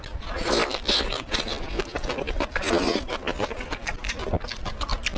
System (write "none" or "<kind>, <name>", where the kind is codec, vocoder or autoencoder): none